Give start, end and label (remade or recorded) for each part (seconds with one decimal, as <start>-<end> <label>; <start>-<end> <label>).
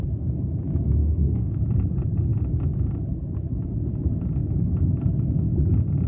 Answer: 0.0-1.0 recorded; 1.0-1.6 remade; 1.6-6.1 recorded